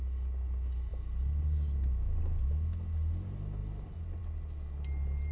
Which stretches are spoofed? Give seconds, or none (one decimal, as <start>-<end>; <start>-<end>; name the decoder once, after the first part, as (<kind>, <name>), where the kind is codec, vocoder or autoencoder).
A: none

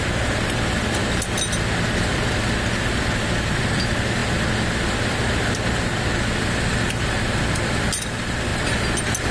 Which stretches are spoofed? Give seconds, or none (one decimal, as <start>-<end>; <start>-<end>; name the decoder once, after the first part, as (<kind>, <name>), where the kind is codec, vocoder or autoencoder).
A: none

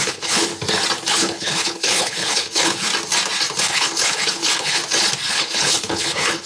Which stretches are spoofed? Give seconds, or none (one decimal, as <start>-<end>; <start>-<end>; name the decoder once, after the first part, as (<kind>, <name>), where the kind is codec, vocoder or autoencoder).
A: 0.0-0.5 (codec, HILCodec); 1.1-2.9; 3.6-4.8; 5.3-6.5

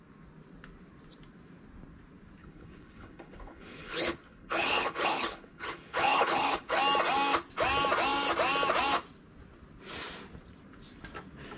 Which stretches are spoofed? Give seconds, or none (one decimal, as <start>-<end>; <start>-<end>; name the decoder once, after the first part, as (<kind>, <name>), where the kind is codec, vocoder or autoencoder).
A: 2.4-6.8 (codec, HILCodec)